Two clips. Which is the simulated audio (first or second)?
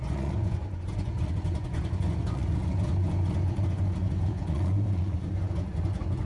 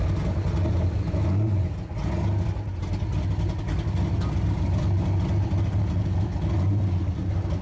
first